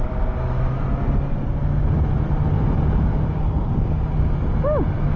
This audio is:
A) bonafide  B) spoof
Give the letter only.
A